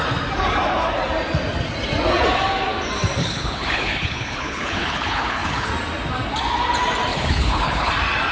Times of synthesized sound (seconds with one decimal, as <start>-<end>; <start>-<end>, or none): 3.2-5.7; 7.1-7.9